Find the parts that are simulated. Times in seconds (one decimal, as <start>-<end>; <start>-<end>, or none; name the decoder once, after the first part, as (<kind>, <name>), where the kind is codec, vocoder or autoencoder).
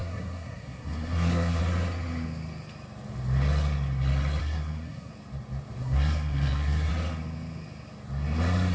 0.0-1.6 (codec, SNAC); 4.4-5.1; 5.8-6.9